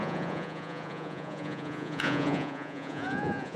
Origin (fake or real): fake